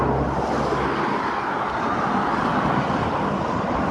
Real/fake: real